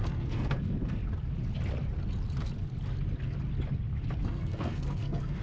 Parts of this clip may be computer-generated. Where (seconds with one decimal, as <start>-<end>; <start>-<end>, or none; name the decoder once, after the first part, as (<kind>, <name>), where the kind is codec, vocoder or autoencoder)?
0.0-1.0 (codec, SNAC); 4.2-5.4